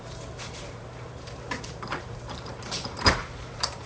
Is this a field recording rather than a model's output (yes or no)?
no